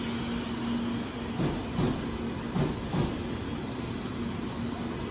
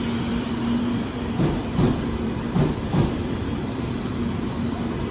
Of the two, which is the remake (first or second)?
second